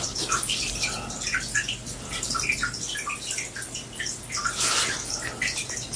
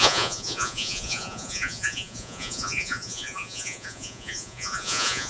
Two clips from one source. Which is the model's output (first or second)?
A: second